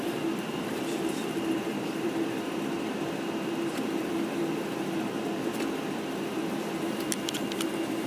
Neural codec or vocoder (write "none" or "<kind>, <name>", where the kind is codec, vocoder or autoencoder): vocoder, BigVGAN v2